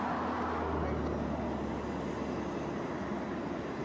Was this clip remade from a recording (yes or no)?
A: no